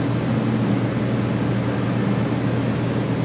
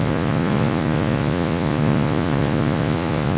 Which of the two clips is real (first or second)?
first